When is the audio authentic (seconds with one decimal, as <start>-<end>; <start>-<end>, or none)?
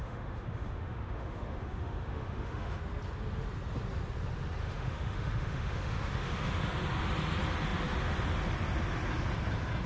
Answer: 2.8-4.6; 6.7-9.9